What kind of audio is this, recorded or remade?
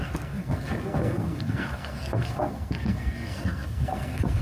remade